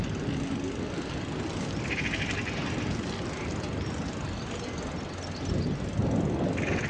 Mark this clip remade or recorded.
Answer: recorded